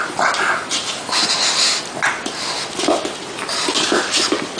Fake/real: real